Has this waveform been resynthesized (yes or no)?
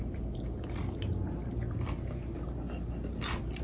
no